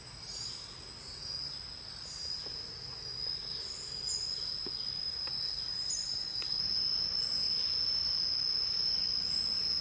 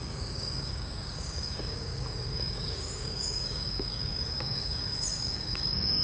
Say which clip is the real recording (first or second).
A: first